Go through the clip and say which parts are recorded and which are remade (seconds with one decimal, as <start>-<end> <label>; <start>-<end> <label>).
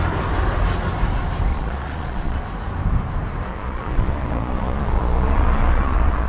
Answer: 0.0-1.5 recorded; 1.5-2.4 remade; 2.4-3.5 recorded; 3.5-6.3 remade